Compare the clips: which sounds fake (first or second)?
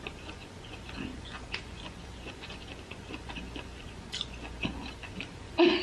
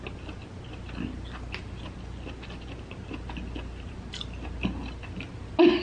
first